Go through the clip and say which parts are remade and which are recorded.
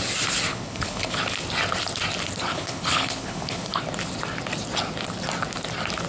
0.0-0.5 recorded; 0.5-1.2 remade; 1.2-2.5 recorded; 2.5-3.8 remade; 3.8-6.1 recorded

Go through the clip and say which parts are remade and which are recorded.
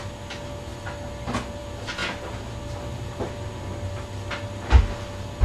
0.0-5.4 recorded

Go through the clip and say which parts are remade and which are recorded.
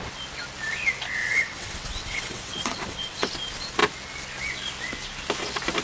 0.0-1.2 recorded; 1.2-3.3 remade; 3.3-5.8 recorded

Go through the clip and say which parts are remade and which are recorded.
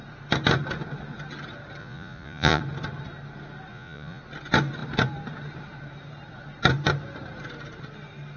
0.0-1.8 recorded; 1.8-2.6 remade; 2.6-3.7 recorded; 3.7-4.2 remade; 4.2-8.4 recorded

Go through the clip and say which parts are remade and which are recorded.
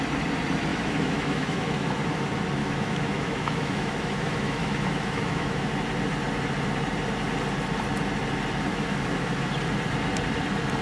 0.0-0.7 recorded; 0.7-2.0 remade; 2.0-2.6 recorded; 2.6-5.7 remade; 5.7-8.7 recorded; 8.7-9.5 remade; 9.5-10.8 recorded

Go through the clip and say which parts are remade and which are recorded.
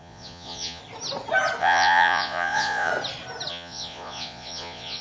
0.0-0.8 remade; 0.8-1.6 recorded; 1.6-2.9 remade; 2.9-3.5 recorded; 3.5-5.0 remade